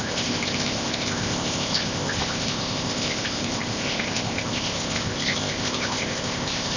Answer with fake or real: fake